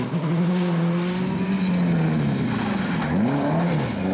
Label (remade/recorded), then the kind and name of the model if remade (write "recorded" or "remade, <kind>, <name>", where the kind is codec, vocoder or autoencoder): recorded